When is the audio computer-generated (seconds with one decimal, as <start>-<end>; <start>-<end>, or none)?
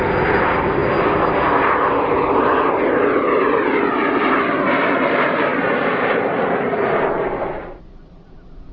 none